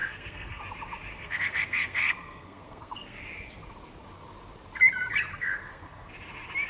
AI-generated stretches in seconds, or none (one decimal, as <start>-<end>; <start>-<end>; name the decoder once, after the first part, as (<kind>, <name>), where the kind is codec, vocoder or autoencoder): 0.0-0.6 (codec, SNAC); 1.1-3.2; 5.3-6.1